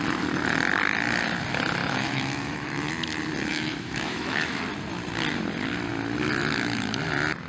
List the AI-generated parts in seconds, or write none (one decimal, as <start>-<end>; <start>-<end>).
1.8-2.9; 3.5-4.6